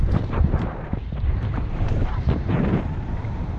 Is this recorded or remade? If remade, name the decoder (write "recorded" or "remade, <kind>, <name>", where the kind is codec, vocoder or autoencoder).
remade, vocoder, BigVGAN v2